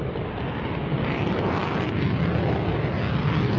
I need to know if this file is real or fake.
real